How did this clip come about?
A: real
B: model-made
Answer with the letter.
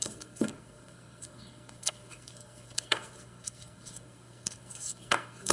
B